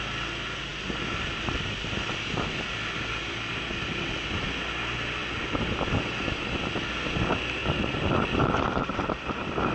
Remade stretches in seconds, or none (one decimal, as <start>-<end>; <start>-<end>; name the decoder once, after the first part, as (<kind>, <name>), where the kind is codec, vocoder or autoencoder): 5.2-5.9 (vocoder, BigVGAN v2); 7.6-8.9